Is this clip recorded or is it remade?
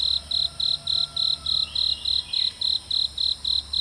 recorded